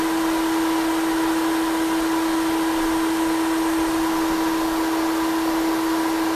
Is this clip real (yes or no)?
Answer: yes